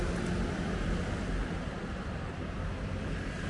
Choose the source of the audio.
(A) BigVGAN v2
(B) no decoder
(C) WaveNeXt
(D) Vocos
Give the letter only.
B